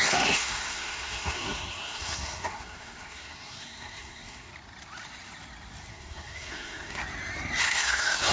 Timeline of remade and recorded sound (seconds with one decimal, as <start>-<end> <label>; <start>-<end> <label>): 0.0-4.5 remade; 4.5-5.9 recorded; 5.9-7.0 remade; 7.0-7.6 recorded; 7.6-8.3 remade

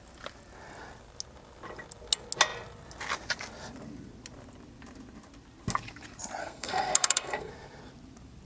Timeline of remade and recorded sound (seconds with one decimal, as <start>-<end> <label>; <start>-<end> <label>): 0.0-6.4 recorded; 6.4-7.5 remade; 7.5-8.4 recorded

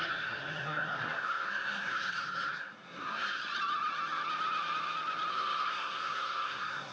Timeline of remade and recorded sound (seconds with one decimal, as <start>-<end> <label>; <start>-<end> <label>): 0.0-3.4 remade; 3.4-5.3 recorded; 5.3-6.9 remade

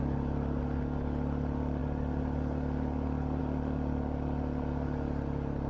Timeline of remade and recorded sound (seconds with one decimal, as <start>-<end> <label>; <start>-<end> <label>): 0.0-5.7 recorded

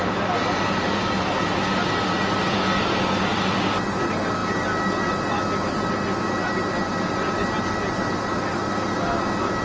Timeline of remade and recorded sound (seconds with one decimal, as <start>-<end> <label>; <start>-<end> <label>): 0.0-9.6 recorded

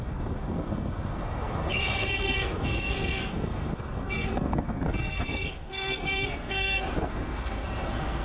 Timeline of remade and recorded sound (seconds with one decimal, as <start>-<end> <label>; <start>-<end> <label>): 0.0-8.2 remade

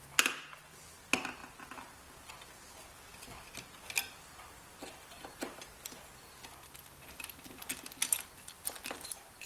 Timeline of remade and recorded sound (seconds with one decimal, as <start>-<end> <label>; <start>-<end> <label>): 0.0-9.5 recorded